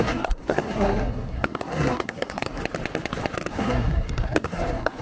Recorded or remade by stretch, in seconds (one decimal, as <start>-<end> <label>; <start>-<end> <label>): 0.0-2.6 remade; 2.6-3.5 recorded; 3.5-5.0 remade